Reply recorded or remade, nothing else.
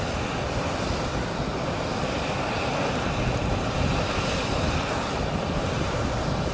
recorded